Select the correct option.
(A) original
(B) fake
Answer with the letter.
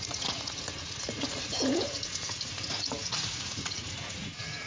B